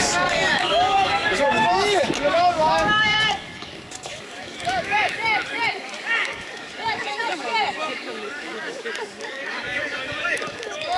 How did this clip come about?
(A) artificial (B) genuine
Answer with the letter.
A